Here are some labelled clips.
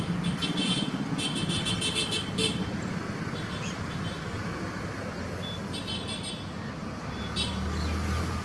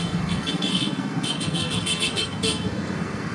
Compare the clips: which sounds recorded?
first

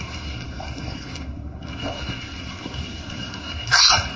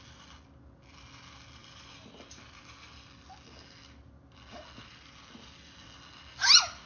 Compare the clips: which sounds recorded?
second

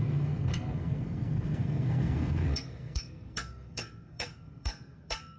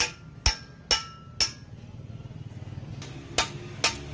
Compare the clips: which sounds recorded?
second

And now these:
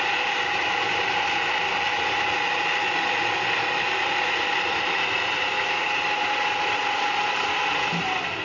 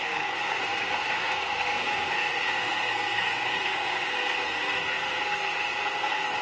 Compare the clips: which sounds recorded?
first